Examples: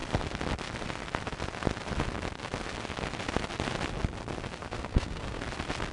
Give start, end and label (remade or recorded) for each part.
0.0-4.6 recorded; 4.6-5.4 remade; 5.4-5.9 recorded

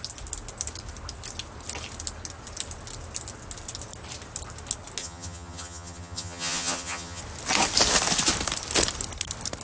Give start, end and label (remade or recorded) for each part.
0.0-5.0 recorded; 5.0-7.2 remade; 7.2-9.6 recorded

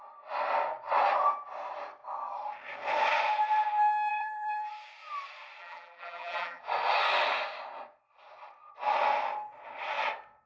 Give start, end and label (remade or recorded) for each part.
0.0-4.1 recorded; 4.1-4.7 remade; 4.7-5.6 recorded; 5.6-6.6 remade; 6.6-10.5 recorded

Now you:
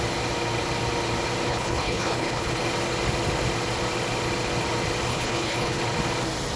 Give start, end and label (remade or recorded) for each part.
0.0-1.5 recorded; 1.5-2.6 remade; 2.6-5.1 recorded; 5.1-5.8 remade; 5.8-6.6 recorded

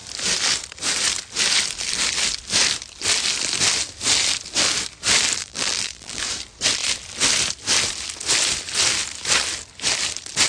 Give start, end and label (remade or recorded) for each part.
0.0-5.4 recorded; 5.4-6.2 remade; 6.2-10.5 recorded